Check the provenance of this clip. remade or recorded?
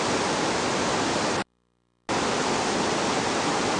recorded